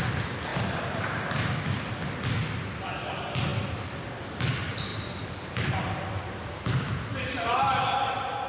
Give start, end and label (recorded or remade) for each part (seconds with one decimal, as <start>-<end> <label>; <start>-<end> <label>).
0.0-0.5 recorded; 0.5-1.5 remade; 1.5-4.9 recorded; 4.9-6.5 remade; 6.5-8.5 recorded